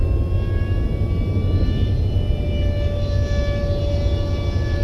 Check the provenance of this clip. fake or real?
real